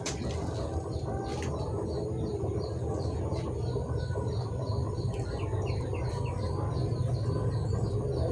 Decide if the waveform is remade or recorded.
recorded